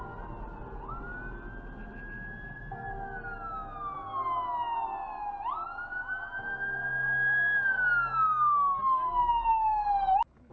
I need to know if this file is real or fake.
real